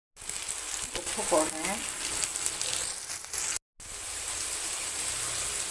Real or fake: real